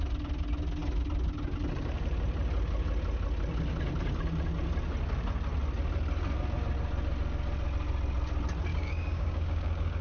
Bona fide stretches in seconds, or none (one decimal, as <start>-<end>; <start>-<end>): 0.0-8.7